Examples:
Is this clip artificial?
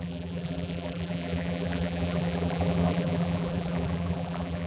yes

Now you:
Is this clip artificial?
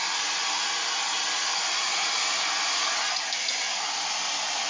no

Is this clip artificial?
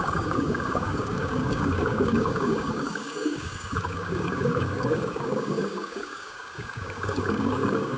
yes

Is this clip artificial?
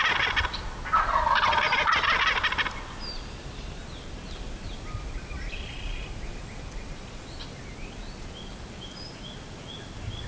no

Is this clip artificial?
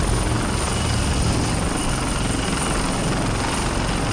no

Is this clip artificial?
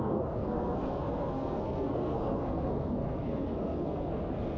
yes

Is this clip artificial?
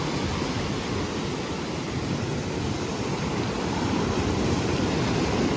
no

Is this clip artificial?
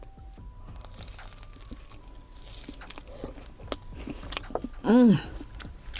no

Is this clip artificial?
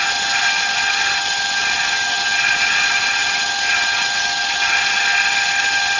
no